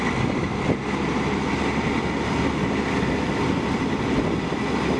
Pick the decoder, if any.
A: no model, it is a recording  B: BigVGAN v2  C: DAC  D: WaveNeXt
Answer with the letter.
A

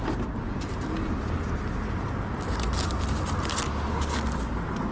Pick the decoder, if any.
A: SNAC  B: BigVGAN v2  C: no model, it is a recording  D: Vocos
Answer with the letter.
C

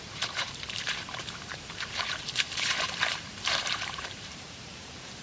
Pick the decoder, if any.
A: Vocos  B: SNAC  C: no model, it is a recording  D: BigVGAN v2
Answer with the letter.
D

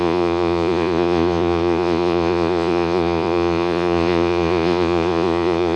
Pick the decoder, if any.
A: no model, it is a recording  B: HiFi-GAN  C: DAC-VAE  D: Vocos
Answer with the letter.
D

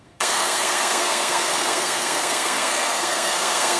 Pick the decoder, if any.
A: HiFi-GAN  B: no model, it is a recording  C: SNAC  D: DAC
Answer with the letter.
C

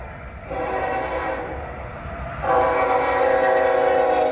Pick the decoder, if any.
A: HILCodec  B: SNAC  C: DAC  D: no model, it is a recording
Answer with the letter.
D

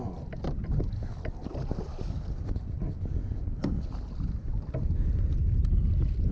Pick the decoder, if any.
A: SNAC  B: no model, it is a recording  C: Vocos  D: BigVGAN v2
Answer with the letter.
B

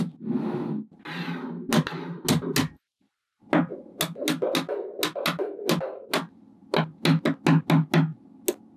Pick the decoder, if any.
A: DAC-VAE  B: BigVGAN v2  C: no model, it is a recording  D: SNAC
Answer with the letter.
C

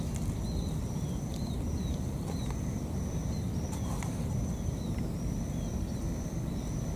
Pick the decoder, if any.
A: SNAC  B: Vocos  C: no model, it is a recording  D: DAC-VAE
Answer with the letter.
C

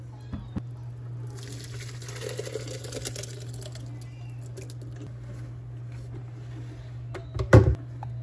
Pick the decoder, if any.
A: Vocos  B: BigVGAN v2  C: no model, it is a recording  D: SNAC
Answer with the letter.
C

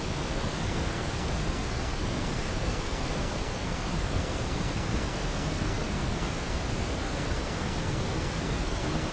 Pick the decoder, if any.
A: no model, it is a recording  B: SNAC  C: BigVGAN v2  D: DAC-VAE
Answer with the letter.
B